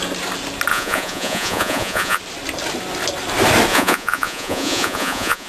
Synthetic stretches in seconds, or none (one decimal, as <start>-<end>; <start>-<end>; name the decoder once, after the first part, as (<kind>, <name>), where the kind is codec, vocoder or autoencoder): 0.7-2.2 (vocoder, Vocos); 3.7-5.5